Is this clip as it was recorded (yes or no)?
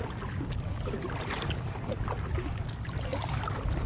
yes